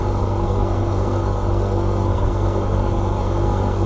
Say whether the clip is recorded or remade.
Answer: remade